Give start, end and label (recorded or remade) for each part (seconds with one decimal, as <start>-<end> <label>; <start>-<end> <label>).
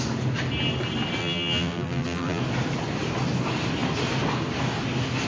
0.0-1.2 recorded; 1.2-2.4 remade; 2.4-5.3 recorded